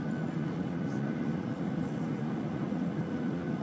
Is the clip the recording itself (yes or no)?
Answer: no